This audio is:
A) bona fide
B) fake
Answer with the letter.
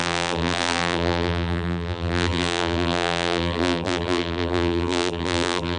B